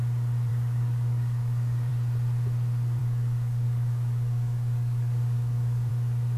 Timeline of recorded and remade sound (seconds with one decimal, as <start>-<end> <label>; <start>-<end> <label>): 0.0-0.5 recorded; 0.5-1.9 remade; 1.9-3.0 recorded; 3.0-5.9 remade; 5.9-6.4 recorded